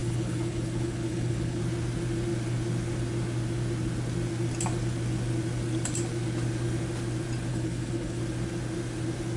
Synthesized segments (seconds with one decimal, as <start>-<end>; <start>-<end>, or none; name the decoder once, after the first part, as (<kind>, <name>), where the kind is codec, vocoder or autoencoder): 0.0-1.6 (codec, HILCodec); 7.5-8.2